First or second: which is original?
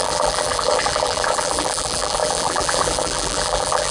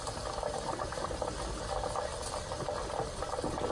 second